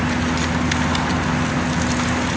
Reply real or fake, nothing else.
real